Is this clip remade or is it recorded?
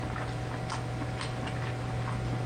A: recorded